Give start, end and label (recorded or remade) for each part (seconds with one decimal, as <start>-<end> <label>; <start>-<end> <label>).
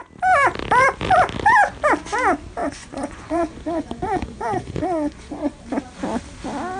0.0-2.6 recorded; 2.6-5.6 remade; 5.6-6.8 recorded